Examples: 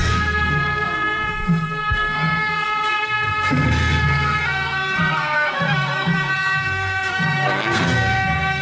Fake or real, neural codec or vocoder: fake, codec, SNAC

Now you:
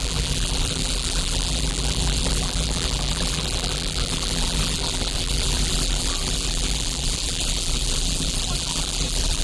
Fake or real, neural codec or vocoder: fake, vocoder, BigVGAN v2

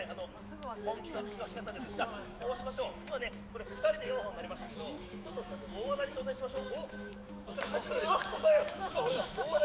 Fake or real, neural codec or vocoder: fake, autoencoder, DAC-VAE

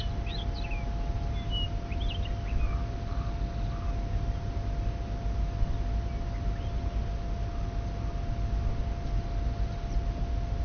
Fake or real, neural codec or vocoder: real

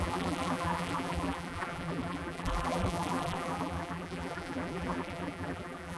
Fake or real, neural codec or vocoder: fake, vocoder, BigVGAN v2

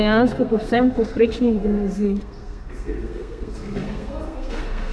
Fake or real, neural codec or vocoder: fake, codec, SNAC